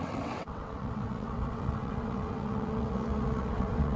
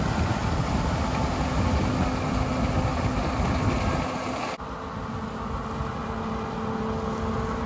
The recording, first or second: second